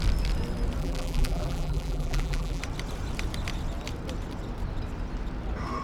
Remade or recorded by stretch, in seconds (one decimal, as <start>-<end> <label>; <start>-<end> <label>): 0.0-0.8 recorded; 0.8-2.6 remade; 2.6-5.8 recorded